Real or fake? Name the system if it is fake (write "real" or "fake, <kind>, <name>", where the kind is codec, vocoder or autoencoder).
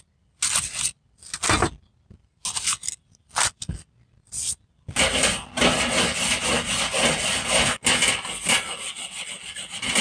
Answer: real